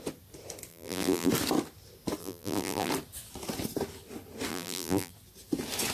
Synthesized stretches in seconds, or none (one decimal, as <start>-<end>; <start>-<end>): 0.7-1.3; 2.2-2.9; 4.5-5.1